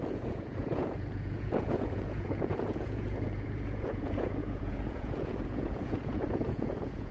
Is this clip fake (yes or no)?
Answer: yes